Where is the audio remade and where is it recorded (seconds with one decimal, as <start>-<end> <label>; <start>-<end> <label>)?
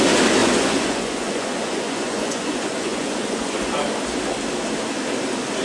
0.0-0.4 recorded; 0.4-3.8 remade; 3.8-5.6 recorded